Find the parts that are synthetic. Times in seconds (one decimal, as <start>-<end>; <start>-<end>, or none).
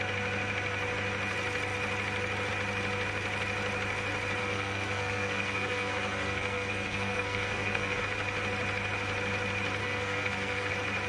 4.4-8.0; 9.8-10.7